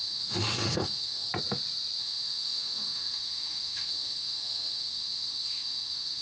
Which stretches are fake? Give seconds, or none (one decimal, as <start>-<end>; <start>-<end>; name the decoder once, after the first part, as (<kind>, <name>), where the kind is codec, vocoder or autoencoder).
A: 0.0-1.3 (autoencoder, DAC-VAE); 2.0-6.2